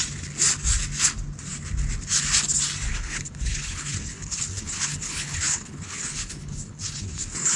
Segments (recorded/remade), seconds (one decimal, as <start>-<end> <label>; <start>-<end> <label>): 0.0-2.9 recorded; 2.9-7.6 remade